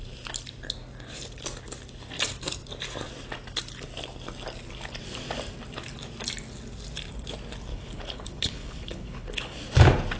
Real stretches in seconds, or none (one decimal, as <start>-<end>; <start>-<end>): 0.0-7.7; 9.6-10.2